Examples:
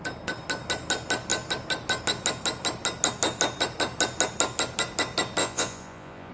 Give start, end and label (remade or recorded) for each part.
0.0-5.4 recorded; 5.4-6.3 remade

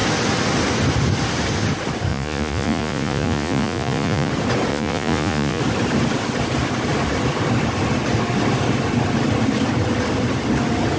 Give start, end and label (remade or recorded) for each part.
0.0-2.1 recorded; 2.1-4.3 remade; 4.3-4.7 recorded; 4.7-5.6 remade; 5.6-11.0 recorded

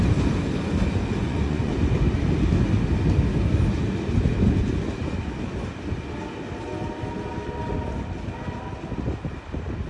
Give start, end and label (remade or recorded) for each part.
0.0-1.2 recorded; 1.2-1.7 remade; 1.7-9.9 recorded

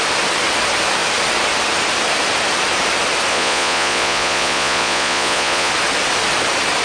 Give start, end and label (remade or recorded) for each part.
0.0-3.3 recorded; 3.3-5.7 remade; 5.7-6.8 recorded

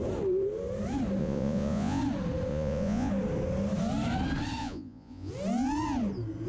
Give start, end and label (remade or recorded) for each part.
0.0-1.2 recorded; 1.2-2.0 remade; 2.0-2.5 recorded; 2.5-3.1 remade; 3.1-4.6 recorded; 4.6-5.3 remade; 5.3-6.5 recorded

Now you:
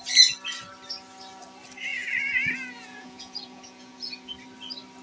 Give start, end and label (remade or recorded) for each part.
0.0-1.9 recorded; 1.9-4.3 remade; 4.3-5.0 recorded

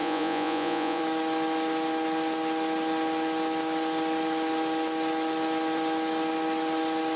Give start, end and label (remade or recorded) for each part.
0.0-1.0 remade; 1.0-7.2 recorded